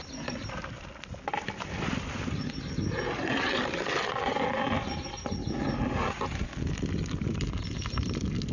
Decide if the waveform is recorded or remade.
recorded